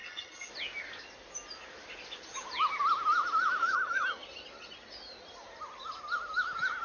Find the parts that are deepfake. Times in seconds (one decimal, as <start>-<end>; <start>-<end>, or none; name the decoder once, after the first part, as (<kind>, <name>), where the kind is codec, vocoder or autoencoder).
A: 0.0-0.5 (vocoder, HiFi-GAN)